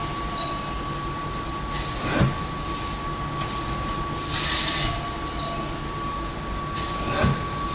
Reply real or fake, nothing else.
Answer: real